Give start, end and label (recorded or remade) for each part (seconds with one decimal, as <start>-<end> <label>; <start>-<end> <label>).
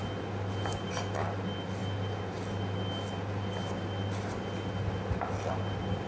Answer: 0.0-6.1 recorded